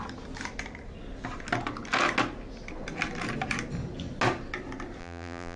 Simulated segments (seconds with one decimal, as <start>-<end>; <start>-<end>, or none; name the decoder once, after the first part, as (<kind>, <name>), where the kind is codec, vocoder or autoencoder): 5.0-5.6 (vocoder, BigVGAN v2)